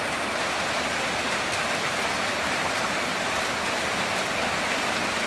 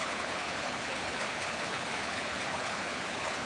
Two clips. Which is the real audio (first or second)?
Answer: first